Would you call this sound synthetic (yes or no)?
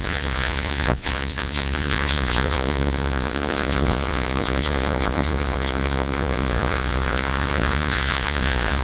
yes